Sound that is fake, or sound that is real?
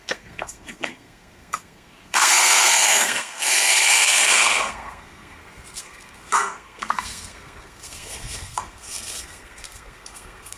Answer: fake